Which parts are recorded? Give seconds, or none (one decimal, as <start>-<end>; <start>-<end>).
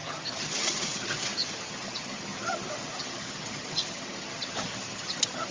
none